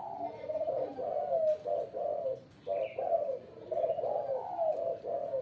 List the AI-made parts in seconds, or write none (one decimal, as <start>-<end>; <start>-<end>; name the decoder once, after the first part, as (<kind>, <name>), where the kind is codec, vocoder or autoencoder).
2.1-4.7 (vocoder, BigVGAN v2)